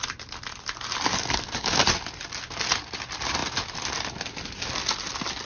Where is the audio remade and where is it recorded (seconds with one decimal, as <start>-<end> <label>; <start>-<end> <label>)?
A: 0.0-1.1 recorded; 1.1-1.8 remade; 1.8-5.4 recorded